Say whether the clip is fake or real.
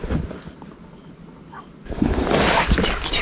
real